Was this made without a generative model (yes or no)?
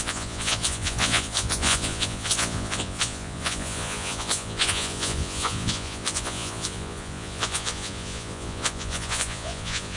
no